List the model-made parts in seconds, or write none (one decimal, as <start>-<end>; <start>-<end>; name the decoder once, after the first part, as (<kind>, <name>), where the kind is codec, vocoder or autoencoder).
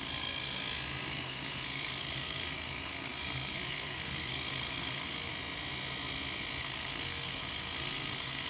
0.0-0.6 (codec, SNAC); 1.1-5.3; 6.6-8.5